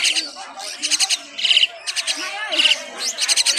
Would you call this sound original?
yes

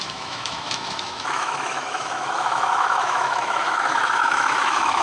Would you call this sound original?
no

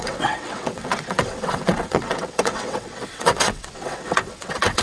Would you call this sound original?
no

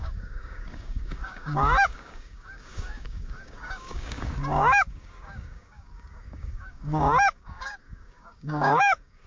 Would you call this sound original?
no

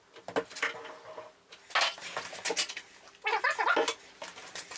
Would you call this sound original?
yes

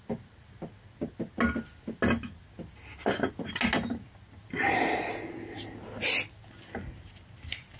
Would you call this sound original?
yes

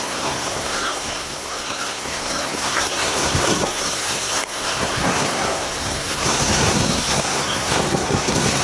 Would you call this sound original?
no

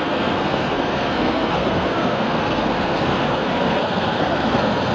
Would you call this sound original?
no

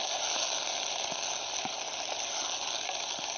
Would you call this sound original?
yes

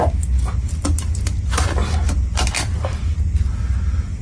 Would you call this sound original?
yes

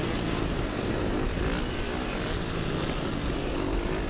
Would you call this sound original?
yes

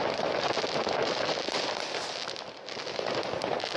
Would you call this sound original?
yes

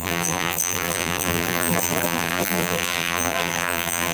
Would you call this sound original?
no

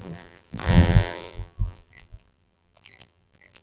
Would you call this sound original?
no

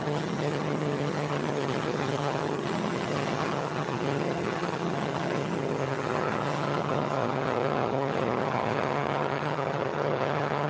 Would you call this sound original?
no